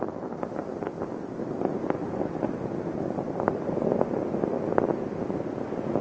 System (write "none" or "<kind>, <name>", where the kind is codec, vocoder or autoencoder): none